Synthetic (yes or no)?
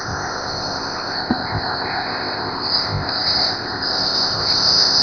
yes